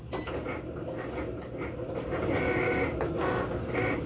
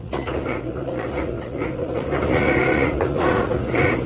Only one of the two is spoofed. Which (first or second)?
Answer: second